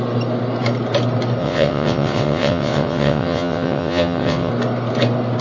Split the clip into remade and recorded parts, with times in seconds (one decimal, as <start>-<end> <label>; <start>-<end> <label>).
0.0-1.4 recorded; 1.4-4.5 remade; 4.5-5.4 recorded